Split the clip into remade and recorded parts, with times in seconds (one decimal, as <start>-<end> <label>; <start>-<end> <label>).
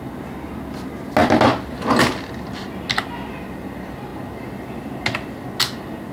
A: 0.0-6.1 recorded